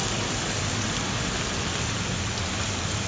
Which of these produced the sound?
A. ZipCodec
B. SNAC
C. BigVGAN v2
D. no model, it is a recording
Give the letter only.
D